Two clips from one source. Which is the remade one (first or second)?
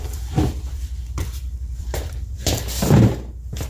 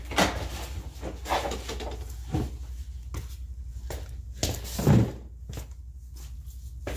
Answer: first